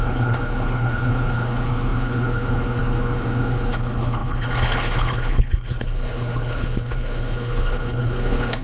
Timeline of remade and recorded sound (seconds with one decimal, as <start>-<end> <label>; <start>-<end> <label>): 0.0-8.6 remade